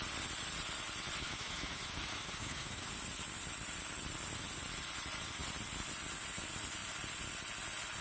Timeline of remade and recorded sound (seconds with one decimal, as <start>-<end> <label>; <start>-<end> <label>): 0.0-1.2 recorded; 1.2-2.9 remade; 2.9-8.0 recorded